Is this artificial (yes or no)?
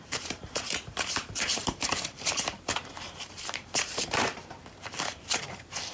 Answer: yes